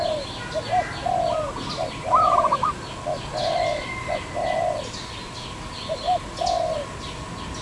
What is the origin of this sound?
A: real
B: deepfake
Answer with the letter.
A